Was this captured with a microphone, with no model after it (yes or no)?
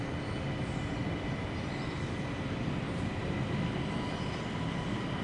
yes